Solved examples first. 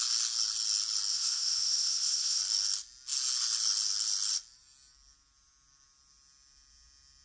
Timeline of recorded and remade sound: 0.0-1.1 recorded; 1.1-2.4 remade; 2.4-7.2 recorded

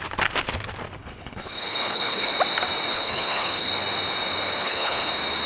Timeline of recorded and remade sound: 0.0-1.0 recorded; 1.0-2.3 remade; 2.3-2.9 recorded; 2.9-3.7 remade; 3.7-4.6 recorded; 4.6-5.1 remade; 5.1-5.5 recorded

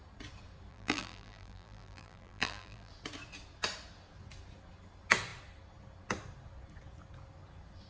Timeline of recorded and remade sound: 0.0-0.7 recorded; 0.7-2.9 remade; 2.9-7.9 recorded